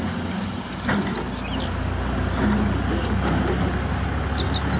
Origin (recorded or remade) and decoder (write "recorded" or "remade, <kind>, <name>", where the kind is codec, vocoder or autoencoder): recorded